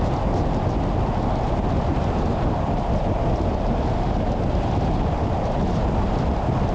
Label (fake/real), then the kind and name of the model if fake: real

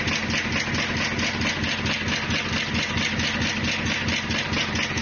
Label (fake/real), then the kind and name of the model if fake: real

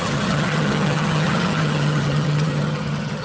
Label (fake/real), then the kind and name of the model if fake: fake, vocoder, HiFi-GAN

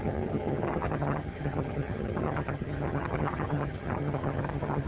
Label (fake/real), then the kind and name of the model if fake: fake, vocoder, HiFi-GAN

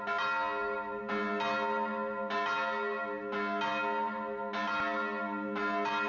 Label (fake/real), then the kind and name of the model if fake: real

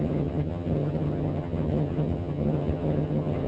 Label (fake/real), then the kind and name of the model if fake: fake, vocoder, HiFi-GAN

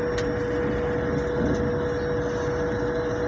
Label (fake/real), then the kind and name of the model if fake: real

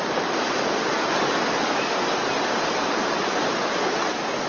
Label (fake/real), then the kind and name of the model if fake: real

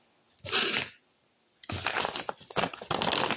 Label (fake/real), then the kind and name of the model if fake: real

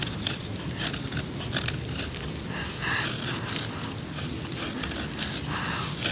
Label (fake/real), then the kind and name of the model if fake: real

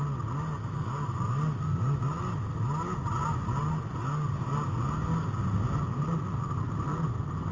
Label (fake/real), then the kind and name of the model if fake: real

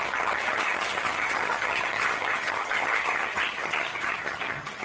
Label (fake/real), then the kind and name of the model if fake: fake, vocoder, HiFi-GAN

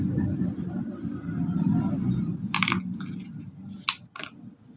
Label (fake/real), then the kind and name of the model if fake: real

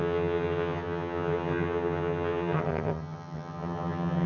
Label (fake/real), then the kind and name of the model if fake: fake, vocoder, HiFi-GAN